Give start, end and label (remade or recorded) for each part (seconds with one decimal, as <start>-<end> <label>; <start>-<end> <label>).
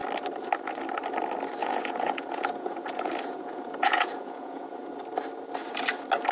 0.0-1.6 recorded; 1.6-4.9 remade; 4.9-6.3 recorded